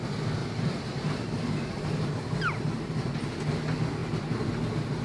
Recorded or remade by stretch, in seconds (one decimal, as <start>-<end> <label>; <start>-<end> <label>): 0.0-0.4 recorded; 0.4-3.4 remade; 3.4-5.0 recorded